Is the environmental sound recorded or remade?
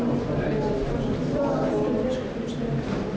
recorded